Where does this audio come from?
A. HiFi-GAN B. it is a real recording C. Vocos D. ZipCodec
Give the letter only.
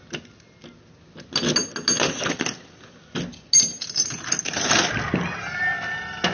B